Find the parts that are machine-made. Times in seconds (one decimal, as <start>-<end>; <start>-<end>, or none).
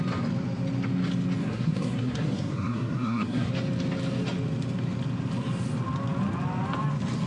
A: 1.4-3.5